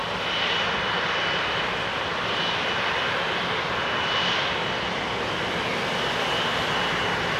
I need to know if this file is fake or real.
real